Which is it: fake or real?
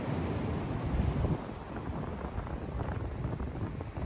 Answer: real